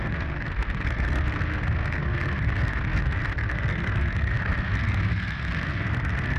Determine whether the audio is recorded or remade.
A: remade